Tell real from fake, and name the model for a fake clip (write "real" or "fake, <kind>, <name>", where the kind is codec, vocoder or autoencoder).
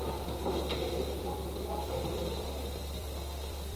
fake, vocoder, BigVGAN v2